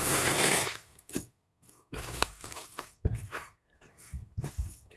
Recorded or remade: remade